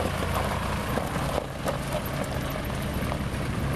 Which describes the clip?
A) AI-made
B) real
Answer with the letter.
B